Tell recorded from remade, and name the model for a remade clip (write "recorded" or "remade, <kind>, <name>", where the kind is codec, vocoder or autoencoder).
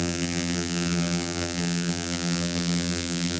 remade, vocoder, BigVGAN v2